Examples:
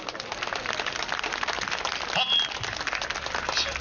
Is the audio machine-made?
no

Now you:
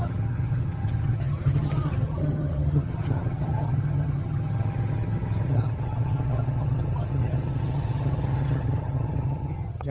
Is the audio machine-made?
yes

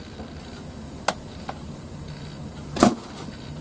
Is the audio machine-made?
no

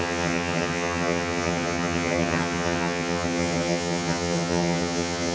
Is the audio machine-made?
yes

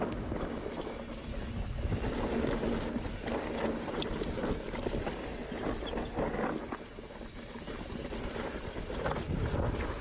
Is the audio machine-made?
no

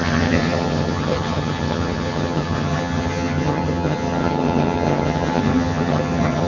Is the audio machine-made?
yes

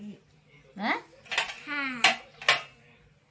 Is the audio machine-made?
no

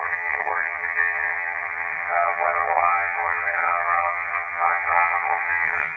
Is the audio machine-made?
yes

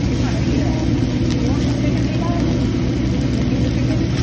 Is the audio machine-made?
no